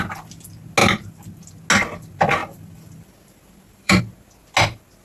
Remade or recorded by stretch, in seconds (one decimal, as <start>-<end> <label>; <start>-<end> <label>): 0.0-2.4 recorded; 2.4-4.0 remade; 4.0-5.0 recorded

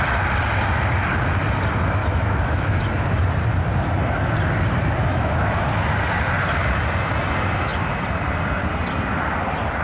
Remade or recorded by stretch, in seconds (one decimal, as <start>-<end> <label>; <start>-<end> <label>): 0.0-2.0 recorded; 2.0-2.8 remade; 2.8-5.1 recorded; 5.1-5.6 remade; 5.6-9.8 recorded

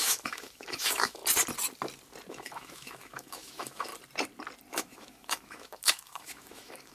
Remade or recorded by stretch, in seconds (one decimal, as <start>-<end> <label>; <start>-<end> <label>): 0.0-1.2 remade; 1.2-2.3 recorded; 2.3-3.9 remade; 3.9-4.7 recorded; 4.7-6.9 remade

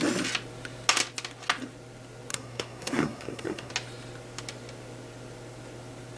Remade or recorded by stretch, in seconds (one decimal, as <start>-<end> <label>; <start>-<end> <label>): 0.0-2.3 recorded; 2.3-3.7 remade; 3.7-6.2 recorded

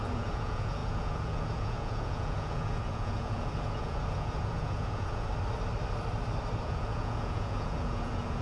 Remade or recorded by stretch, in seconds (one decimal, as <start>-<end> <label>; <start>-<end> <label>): 0.0-5.3 remade; 5.3-6.6 recorded; 6.6-8.4 remade

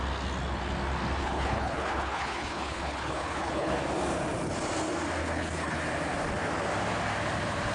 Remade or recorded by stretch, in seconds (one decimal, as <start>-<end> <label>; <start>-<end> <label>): 0.0-1.2 recorded; 1.2-3.7 remade; 3.7-5.2 recorded; 5.2-5.8 remade; 5.8-7.7 recorded

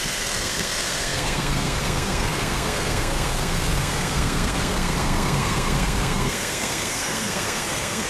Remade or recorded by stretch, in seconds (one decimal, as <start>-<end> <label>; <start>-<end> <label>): 0.0-8.1 remade